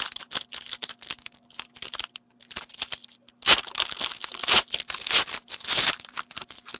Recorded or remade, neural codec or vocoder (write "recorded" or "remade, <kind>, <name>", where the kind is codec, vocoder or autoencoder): recorded